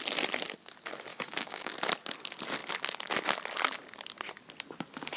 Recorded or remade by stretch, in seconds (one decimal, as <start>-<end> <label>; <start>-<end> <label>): 0.0-1.1 recorded; 1.1-1.7 remade; 1.7-5.2 recorded

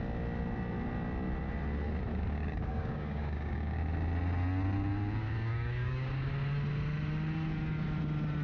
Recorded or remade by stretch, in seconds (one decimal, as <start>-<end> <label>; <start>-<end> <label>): 0.0-2.1 recorded; 2.1-3.8 remade; 3.8-5.2 recorded; 5.2-6.3 remade; 6.3-8.4 recorded

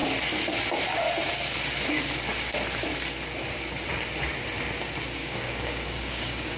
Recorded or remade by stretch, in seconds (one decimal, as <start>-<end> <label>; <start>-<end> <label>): 0.0-5.2 recorded; 5.2-6.6 remade

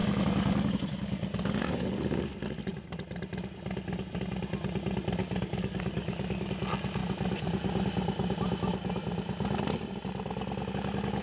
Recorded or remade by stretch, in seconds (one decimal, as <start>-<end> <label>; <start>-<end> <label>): 0.0-2.3 remade; 2.3-5.2 recorded; 5.2-6.5 remade; 6.5-11.2 recorded

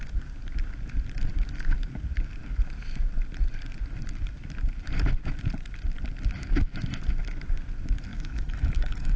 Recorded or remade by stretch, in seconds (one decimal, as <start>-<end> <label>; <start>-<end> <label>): 0.0-8.1 recorded; 8.1-9.2 remade

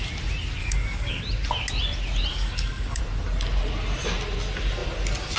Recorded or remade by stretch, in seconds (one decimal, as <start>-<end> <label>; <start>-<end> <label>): 0.0-0.6 recorded; 0.6-1.2 remade; 1.2-2.3 recorded; 2.3-3.0 remade; 3.0-5.4 recorded